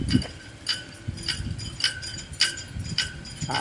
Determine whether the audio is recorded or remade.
recorded